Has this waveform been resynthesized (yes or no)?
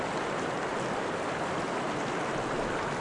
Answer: no